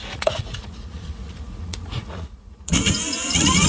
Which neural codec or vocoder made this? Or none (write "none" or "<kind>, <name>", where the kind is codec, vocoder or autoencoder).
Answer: vocoder, Vocos